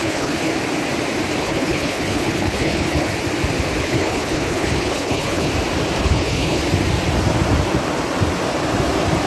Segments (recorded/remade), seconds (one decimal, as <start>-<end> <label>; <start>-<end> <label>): 0.0-0.5 remade; 0.5-1.4 recorded; 1.4-3.1 remade; 3.1-3.8 recorded; 3.8-5.5 remade; 5.5-6.0 recorded; 6.0-6.6 remade; 6.6-9.3 recorded